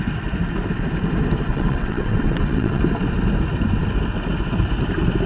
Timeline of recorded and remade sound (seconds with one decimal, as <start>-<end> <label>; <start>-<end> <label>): 0.0-1.5 recorded; 1.5-2.8 remade; 2.8-5.3 recorded

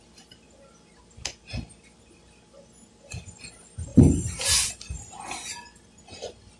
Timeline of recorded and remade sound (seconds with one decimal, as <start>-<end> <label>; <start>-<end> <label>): 0.0-6.6 recorded

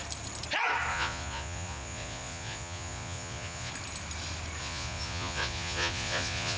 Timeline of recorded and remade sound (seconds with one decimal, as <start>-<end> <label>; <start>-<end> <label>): 0.0-0.9 recorded; 0.9-3.7 remade; 3.7-4.6 recorded; 4.6-6.6 remade